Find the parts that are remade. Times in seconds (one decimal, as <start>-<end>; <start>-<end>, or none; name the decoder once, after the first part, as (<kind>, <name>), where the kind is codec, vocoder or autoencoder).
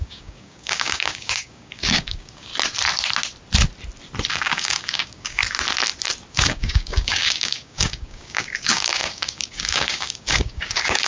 0.0-2.5 (codec, DAC); 4.3-5.4; 6.3-11.1